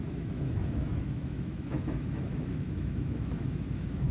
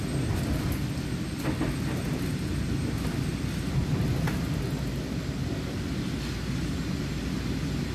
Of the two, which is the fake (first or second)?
first